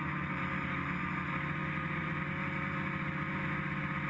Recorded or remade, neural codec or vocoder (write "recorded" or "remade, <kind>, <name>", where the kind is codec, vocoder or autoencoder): recorded